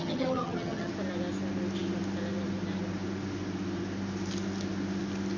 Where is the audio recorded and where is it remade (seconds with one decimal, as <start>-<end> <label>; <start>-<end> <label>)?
0.0-0.9 remade; 0.9-5.4 recorded